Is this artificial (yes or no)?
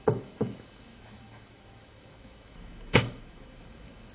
yes